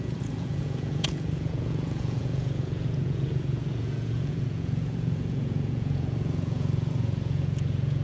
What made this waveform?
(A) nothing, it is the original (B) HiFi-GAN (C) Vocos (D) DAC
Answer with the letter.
C